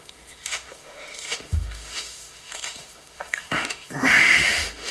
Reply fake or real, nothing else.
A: fake